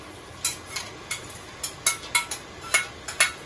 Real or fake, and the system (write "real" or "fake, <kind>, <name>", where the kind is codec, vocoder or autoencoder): real